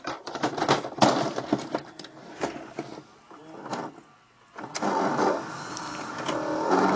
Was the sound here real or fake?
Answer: real